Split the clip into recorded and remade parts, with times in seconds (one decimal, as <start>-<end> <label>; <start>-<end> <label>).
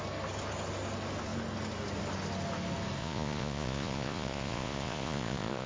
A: 0.0-3.0 recorded; 3.0-5.7 remade